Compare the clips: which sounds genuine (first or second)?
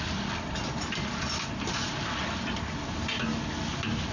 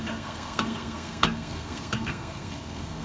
first